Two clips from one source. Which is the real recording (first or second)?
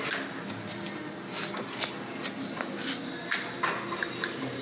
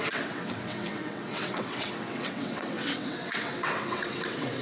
first